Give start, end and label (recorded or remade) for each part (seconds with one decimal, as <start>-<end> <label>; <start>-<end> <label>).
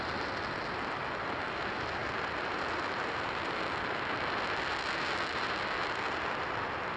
0.0-7.0 recorded